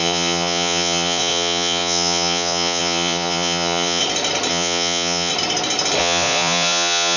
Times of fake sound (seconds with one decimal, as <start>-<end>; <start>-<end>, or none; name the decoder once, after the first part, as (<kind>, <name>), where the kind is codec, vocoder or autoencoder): 0.0-4.0 (vocoder, Vocos); 4.5-5.3; 6.0-7.2